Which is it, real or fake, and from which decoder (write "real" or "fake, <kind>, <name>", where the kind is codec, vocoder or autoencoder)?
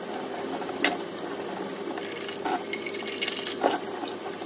real